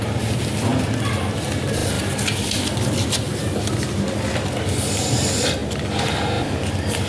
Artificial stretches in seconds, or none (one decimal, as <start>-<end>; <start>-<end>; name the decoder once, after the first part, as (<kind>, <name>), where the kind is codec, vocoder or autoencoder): none